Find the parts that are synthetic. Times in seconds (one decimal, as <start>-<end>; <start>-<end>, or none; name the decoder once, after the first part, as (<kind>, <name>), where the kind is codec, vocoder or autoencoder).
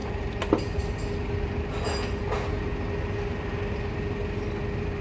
none